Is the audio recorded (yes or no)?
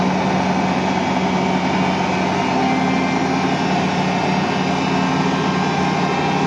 yes